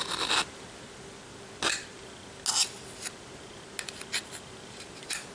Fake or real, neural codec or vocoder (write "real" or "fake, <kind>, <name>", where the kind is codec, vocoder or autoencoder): real